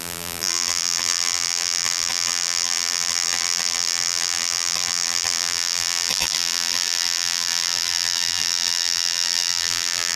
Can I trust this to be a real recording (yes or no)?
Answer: no